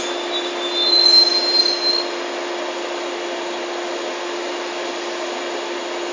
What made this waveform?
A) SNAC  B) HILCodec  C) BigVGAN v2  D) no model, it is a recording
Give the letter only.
D